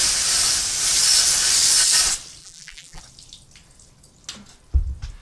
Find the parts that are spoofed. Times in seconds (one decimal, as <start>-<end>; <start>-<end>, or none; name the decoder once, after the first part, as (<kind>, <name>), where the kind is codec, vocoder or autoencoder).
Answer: 2.4-3.0 (vocoder, BigVGAN v2)